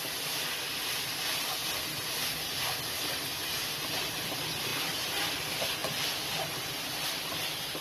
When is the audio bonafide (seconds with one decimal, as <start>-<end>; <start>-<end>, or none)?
1.6-3.8; 5.8-6.4